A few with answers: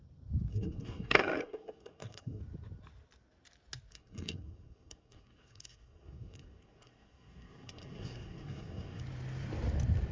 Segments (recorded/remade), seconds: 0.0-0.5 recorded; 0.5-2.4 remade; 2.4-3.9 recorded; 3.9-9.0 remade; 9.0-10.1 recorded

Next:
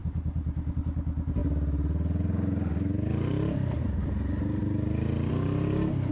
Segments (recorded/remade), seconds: 0.0-0.8 remade; 0.8-6.1 recorded

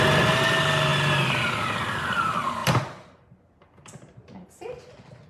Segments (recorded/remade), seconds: 0.0-5.3 recorded